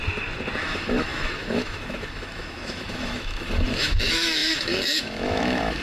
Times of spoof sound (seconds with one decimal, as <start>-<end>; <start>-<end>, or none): 0.6-5.8